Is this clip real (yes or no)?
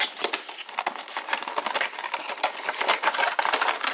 yes